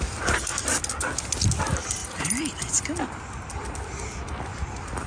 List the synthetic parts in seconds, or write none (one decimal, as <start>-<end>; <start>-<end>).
2.0-5.1

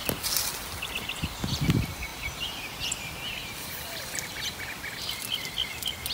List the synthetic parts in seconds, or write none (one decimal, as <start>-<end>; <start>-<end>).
0.6-6.1

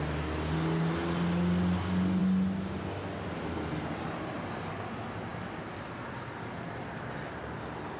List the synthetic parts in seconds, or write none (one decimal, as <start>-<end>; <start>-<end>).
5.3-7.4